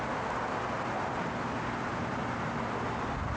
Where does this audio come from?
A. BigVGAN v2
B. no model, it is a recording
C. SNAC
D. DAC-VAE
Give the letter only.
B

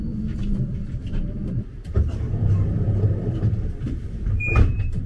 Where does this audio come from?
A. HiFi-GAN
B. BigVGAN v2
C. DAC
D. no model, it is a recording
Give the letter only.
B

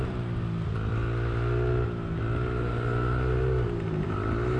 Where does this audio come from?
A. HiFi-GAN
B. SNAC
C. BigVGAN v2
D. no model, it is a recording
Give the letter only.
D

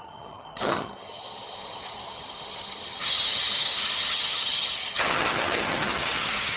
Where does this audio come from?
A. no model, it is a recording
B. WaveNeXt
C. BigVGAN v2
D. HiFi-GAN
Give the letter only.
D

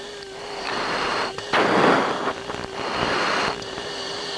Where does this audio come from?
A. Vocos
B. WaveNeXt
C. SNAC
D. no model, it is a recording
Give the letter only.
D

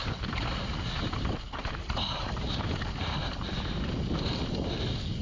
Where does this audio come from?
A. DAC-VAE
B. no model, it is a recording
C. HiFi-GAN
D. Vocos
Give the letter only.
B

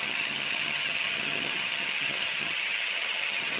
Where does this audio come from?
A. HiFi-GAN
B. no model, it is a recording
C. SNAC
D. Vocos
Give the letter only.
A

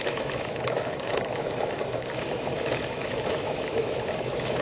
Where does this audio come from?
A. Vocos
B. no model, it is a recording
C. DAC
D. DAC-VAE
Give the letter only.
D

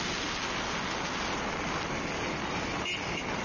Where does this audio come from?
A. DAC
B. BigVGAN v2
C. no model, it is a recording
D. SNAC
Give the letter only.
C